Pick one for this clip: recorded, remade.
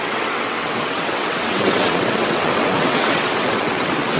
remade